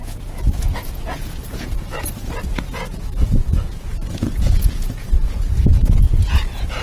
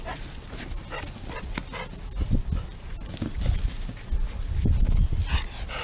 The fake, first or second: first